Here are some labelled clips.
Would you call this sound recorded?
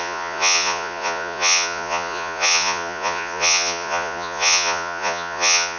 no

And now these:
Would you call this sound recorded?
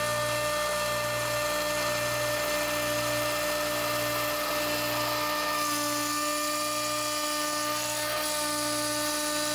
yes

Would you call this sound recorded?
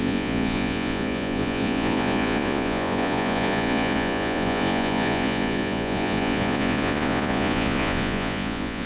no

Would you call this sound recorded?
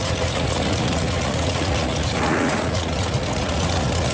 no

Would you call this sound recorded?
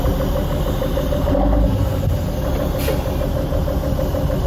yes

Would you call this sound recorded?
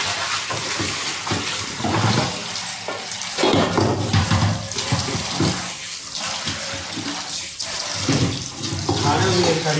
yes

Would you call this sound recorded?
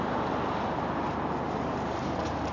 yes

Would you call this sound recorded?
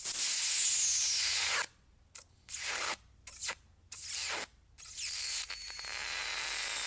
yes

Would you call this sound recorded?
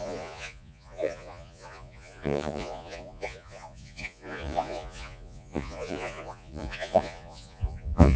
no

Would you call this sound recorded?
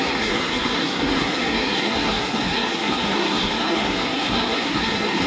no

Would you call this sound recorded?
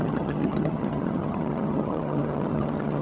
no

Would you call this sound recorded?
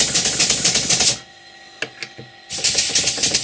yes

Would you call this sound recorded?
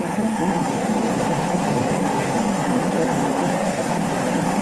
no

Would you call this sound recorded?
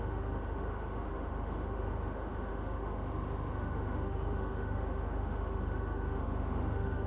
no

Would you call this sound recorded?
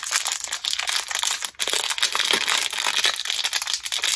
yes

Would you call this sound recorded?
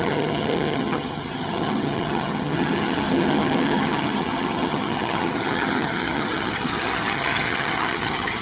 no